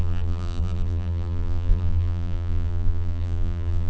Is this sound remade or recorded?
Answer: remade